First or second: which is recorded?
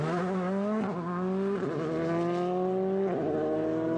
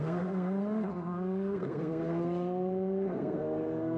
first